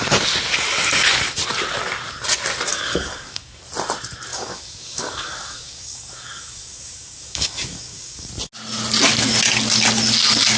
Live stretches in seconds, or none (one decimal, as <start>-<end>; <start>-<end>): 0.0-2.7; 3.6-4.3; 8.3-10.6